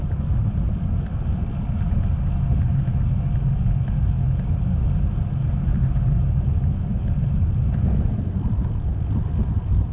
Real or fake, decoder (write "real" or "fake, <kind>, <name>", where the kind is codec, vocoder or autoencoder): real